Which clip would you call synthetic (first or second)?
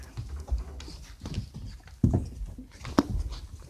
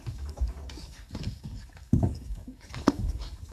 second